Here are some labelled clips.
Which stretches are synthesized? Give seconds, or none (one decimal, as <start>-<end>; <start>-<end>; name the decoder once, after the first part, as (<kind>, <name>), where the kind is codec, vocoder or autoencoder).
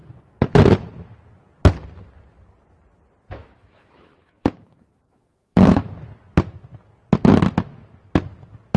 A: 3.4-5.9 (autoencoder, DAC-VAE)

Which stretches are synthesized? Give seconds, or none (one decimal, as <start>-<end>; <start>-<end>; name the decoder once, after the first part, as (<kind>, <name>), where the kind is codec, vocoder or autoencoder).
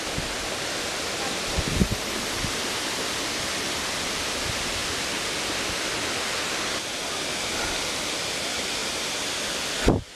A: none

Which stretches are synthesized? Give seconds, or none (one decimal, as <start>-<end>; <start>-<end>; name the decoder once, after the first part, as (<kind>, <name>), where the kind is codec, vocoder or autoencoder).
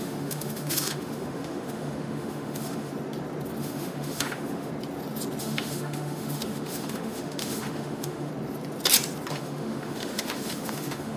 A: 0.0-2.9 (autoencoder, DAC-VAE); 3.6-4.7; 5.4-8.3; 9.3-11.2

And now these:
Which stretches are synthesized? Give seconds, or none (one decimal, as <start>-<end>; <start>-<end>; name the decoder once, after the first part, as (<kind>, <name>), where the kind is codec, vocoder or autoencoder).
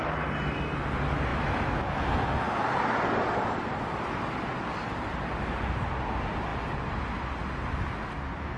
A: none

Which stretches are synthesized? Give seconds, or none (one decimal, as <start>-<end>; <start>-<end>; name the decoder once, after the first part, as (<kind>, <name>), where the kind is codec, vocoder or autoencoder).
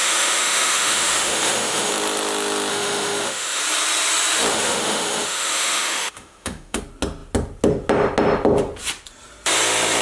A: 0.0-1.9 (autoencoder, DAC-VAE); 2.7-3.6; 4.5-6.8